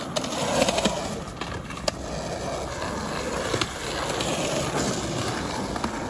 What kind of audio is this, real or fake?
real